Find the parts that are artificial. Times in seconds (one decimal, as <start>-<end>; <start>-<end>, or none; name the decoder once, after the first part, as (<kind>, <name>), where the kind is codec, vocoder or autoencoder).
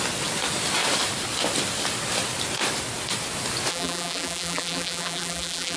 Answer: 3.7-5.8 (vocoder, BigVGAN v2)